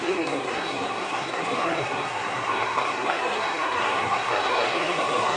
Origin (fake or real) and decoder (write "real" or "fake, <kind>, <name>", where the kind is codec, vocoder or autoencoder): fake, codec, SNAC